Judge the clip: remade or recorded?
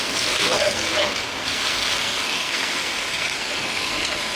remade